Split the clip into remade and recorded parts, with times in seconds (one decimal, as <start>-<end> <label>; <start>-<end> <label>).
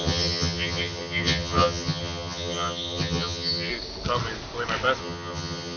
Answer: 0.0-3.7 remade; 3.7-5.0 recorded; 5.0-5.8 remade